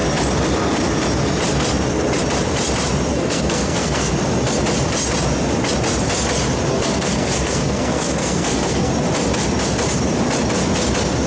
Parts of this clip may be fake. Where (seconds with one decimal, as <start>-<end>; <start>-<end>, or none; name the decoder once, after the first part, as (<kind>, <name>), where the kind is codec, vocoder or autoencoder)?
3.1-4.1 (codec, SNAC); 6.7-8.9